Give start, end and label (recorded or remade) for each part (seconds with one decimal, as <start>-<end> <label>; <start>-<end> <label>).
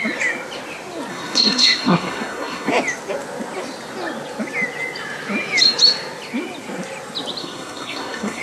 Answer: 0.0-1.1 recorded; 1.1-2.7 remade; 2.7-7.4 recorded; 7.4-8.4 remade